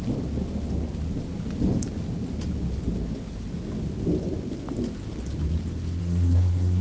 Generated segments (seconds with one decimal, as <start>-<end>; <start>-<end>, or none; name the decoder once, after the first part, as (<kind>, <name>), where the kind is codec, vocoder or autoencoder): 6.0-6.8 (codec, SNAC)